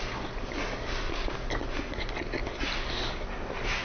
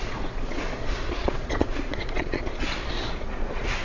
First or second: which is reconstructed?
second